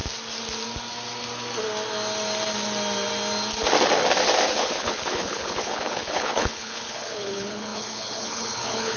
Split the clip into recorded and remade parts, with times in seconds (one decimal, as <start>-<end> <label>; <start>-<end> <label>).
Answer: 0.0-4.6 recorded; 4.6-9.0 remade